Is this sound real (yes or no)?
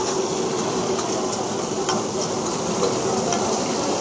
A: no